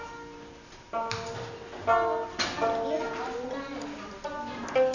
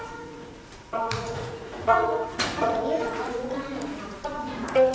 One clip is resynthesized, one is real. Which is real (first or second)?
first